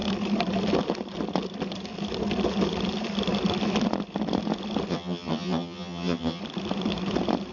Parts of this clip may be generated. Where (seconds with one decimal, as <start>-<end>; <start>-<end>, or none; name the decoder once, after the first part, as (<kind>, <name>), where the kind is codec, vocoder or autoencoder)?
4.9-6.4 (vocoder, HiFi-GAN)